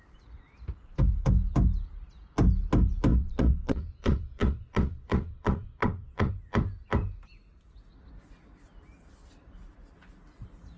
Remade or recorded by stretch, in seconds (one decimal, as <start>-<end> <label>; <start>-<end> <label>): 0.0-3.1 recorded; 3.1-6.3 remade; 6.3-10.8 recorded